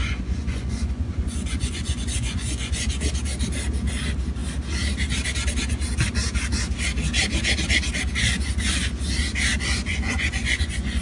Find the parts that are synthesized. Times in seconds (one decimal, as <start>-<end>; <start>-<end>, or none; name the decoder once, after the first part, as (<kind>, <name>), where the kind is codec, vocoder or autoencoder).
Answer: 0.0-2.9 (vocoder, Vocos); 9.9-11.0